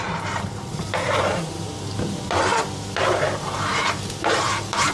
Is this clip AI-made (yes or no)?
yes